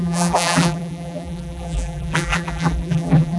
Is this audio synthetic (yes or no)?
yes